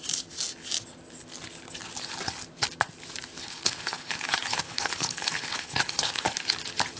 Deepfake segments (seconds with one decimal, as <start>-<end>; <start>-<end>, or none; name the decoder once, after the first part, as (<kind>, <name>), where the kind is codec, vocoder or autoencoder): 3.4-6.4 (codec, HILCodec)